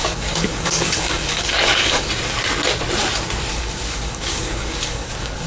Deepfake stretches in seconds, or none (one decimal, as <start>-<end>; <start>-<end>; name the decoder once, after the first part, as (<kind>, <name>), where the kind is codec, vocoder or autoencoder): 0.0-2.1 (codec, DAC); 3.5-5.5